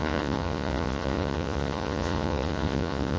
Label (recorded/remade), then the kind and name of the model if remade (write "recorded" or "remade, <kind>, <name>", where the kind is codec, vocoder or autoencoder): remade, vocoder, Vocos